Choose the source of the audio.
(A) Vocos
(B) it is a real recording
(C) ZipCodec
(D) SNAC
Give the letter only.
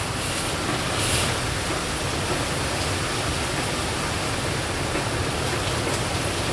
B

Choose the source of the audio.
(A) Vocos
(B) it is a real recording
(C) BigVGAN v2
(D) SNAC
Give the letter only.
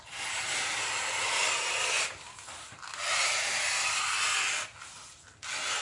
B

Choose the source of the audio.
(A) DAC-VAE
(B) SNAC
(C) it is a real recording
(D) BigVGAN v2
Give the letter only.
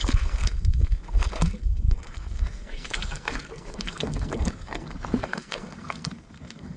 B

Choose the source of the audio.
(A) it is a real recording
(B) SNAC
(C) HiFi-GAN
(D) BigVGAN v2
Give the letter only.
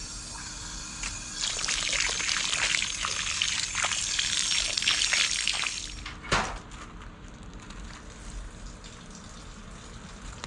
A